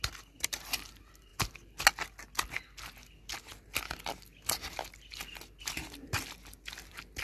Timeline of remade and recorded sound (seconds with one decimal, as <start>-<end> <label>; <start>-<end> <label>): 0.0-1.3 remade; 1.3-5.6 recorded; 5.6-7.2 remade